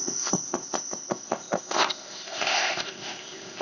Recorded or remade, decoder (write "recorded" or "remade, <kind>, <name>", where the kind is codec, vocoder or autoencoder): remade, codec, ZipCodec